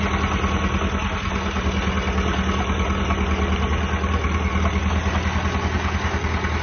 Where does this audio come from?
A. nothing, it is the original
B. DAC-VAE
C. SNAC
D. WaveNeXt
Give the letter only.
A